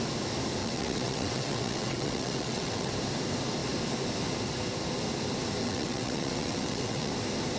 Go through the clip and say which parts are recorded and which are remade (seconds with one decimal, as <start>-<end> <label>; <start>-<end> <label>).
0.0-0.6 recorded; 0.6-2.9 remade; 2.9-5.6 recorded; 5.6-7.1 remade; 7.1-7.6 recorded